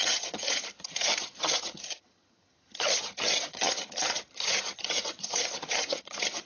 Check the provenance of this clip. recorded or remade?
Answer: remade